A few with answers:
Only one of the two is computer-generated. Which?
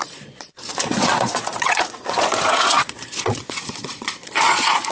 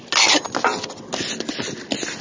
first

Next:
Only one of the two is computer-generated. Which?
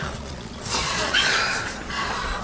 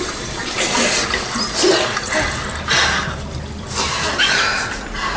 first